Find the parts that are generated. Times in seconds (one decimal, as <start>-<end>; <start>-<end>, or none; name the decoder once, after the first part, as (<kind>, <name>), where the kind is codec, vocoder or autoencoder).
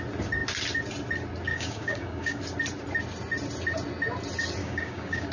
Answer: 1.5-2.4 (codec, DAC); 4.6-5.3